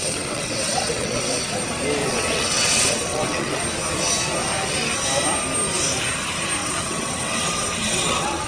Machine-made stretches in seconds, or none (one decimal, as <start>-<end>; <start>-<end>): 0.0-1.4; 2.0-3.6; 6.6-8.5